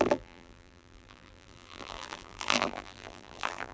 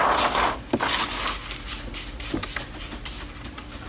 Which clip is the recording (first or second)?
second